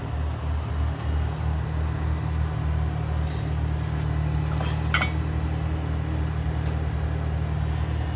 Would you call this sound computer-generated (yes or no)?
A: no